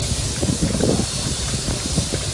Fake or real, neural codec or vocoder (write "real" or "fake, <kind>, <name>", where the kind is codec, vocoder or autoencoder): fake, vocoder, BigVGAN v2